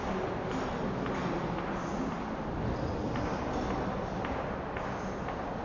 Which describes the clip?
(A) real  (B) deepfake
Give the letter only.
A